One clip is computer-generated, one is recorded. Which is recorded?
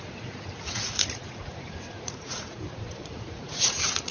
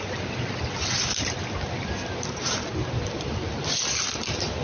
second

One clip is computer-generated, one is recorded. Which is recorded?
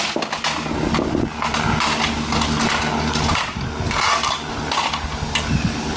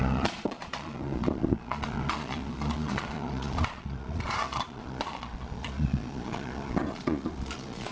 first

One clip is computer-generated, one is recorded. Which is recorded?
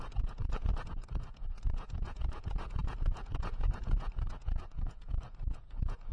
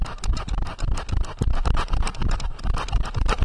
second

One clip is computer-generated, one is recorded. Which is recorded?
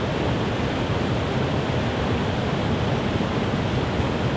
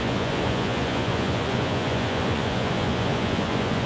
first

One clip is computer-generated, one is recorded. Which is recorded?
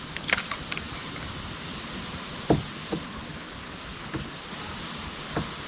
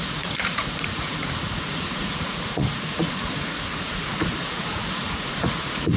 first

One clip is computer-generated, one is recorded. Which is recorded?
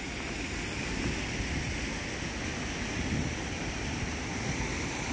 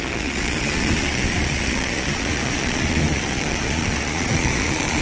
first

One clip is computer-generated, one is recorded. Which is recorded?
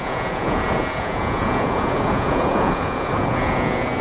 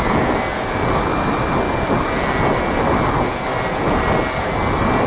second